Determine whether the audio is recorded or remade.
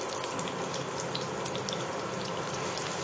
recorded